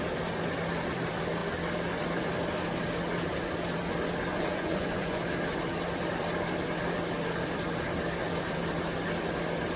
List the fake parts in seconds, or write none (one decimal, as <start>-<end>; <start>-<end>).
4.3-5.2